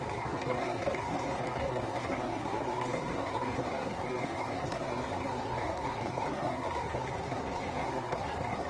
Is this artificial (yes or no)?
yes